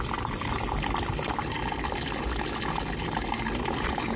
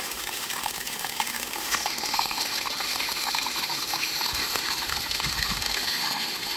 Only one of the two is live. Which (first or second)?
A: first